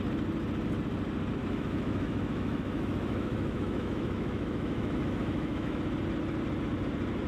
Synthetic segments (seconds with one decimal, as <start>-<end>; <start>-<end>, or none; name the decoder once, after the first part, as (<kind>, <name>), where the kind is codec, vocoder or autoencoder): 1.4-5.8 (autoencoder, DAC-VAE)